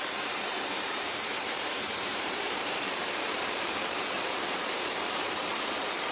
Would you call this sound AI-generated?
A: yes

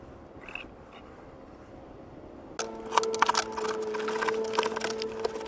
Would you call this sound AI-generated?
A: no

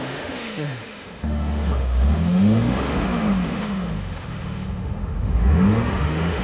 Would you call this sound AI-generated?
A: yes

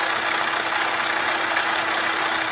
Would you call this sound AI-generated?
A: no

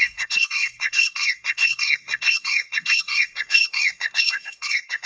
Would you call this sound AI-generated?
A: yes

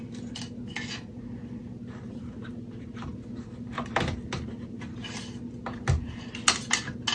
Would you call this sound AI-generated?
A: no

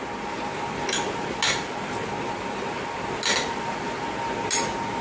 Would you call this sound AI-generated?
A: no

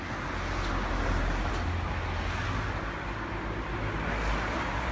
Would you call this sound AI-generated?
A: no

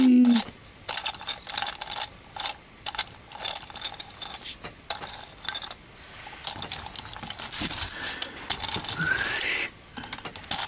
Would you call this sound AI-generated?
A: no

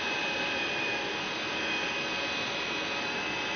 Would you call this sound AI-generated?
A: yes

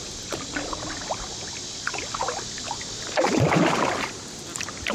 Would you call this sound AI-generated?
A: no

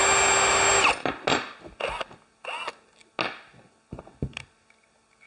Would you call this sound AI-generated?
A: no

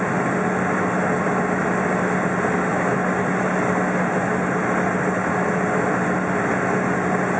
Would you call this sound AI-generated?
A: no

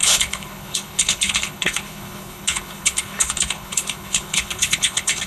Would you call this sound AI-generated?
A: yes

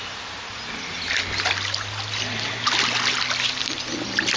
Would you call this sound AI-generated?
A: no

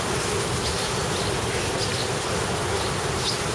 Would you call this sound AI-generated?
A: no